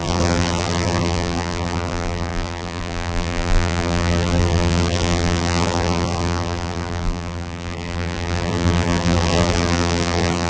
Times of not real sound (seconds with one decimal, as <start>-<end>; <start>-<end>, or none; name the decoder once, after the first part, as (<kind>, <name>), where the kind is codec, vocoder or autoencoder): 0.0-10.5 (vocoder, BigVGAN v2)